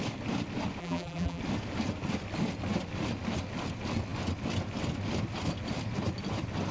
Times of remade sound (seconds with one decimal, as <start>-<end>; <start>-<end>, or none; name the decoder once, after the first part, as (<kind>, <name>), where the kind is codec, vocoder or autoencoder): 0.8-1.4 (vocoder, BigVGAN v2)